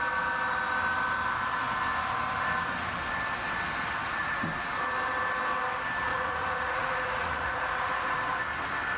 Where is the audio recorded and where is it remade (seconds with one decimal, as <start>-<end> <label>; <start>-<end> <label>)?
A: 0.0-4.0 recorded; 4.0-4.5 remade; 4.5-6.1 recorded; 6.1-8.2 remade; 8.2-9.0 recorded